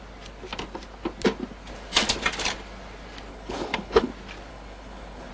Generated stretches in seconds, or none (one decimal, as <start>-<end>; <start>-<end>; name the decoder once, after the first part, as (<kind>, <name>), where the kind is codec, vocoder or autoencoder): 3.3-4.1 (codec, HILCodec); 4.5-5.3